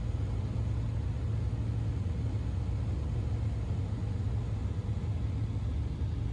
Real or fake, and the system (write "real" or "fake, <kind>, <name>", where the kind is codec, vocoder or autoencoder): real